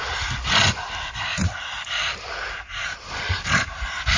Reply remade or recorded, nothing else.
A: recorded